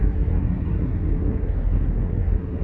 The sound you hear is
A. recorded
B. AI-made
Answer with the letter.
B